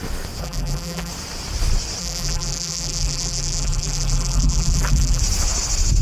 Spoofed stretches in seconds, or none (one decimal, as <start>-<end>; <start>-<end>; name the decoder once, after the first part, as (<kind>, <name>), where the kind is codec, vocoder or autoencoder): 0.4-1.1 (vocoder, BigVGAN v2); 2.0-5.2